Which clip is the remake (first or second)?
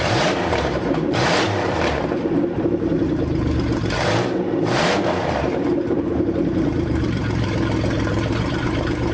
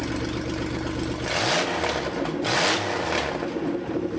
first